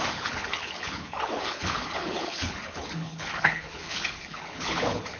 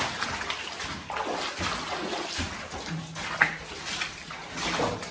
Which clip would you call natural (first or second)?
second